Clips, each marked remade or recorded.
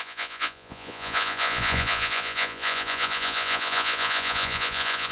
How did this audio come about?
remade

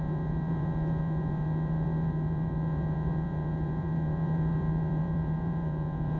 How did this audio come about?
remade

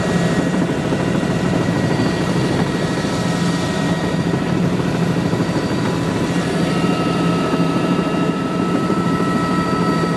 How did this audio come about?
remade